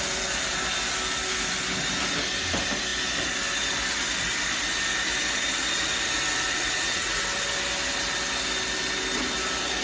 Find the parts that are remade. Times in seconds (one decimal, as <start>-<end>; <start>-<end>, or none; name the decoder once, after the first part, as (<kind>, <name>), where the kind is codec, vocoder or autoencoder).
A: 6.5-7.2 (vocoder, Vocos)